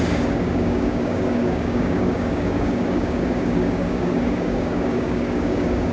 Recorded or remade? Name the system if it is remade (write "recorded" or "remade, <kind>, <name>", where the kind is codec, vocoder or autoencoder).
remade, codec, DAC